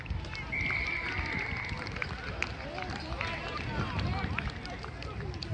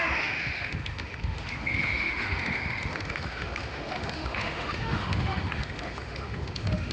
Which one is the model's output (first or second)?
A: second